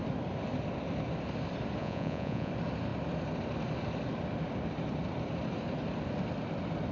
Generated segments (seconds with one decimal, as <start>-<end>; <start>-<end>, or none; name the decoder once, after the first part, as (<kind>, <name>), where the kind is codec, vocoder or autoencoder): 1.8-2.5 (vocoder, Vocos)